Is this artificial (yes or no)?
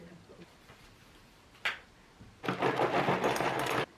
no